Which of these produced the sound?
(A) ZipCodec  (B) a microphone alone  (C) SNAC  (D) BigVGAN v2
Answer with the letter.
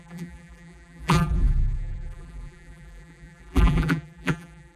D